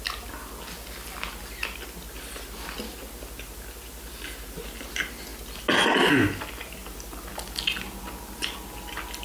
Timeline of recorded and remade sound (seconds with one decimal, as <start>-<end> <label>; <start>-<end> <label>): 0.0-9.2 recorded